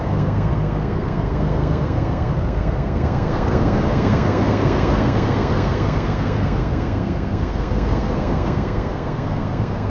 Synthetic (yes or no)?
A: yes